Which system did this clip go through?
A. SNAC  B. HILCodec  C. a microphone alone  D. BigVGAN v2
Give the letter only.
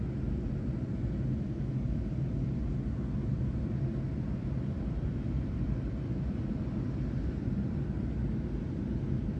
C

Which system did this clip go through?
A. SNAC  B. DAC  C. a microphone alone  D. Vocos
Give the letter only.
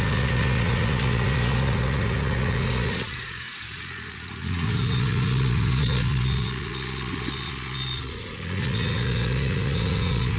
D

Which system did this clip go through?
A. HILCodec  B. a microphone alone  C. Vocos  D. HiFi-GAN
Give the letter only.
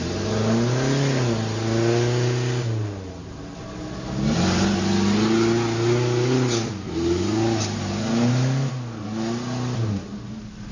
B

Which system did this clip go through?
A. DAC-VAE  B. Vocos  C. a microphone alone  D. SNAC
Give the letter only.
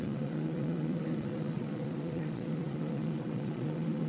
B